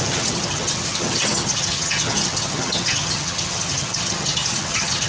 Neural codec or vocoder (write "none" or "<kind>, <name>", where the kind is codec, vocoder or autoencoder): vocoder, HiFi-GAN